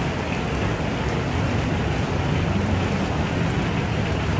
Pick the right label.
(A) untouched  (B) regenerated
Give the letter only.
A